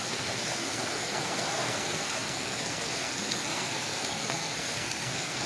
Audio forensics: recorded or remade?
remade